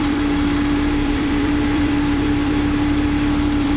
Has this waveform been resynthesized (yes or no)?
yes